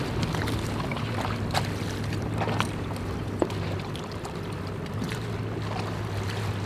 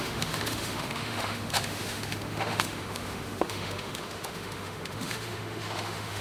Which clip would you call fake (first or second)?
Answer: second